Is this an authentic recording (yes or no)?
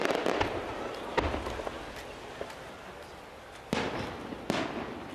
yes